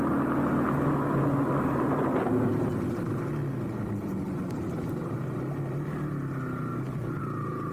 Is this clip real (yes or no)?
yes